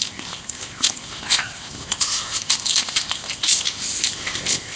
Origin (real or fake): fake